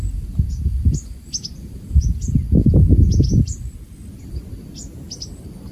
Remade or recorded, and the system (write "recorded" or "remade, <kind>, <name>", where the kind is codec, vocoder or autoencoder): recorded